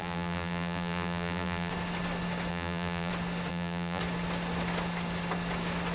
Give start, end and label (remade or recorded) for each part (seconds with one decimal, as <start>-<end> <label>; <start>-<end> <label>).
0.0-1.7 remade; 1.7-2.5 recorded; 2.5-3.1 remade; 3.1-3.5 recorded; 3.5-4.0 remade; 4.0-5.9 recorded